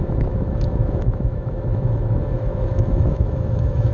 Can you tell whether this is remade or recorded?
remade